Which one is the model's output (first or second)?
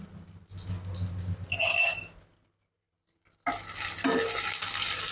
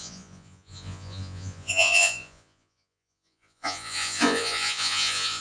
second